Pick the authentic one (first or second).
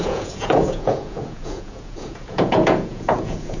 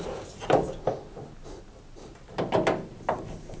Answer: second